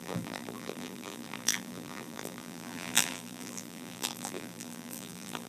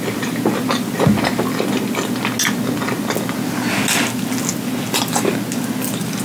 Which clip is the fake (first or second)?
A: first